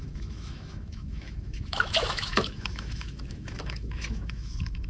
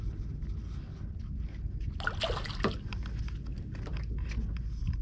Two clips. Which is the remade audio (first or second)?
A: first